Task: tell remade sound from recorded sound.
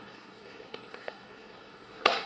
remade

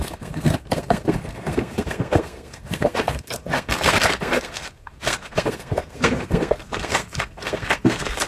remade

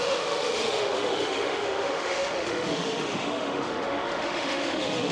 remade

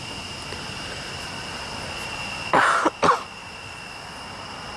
recorded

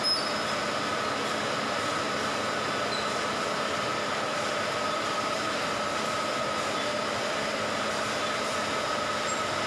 recorded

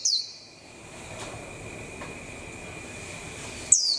recorded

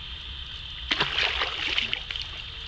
recorded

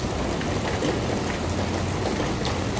recorded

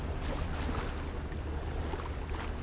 recorded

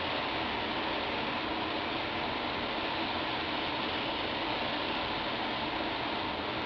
recorded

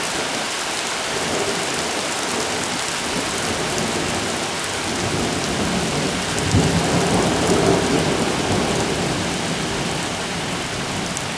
recorded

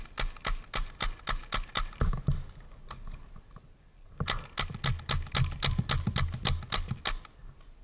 recorded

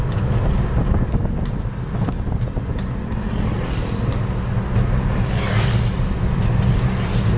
recorded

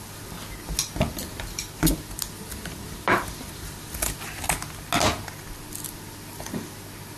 recorded